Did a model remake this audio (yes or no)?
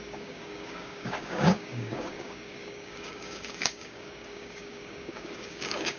yes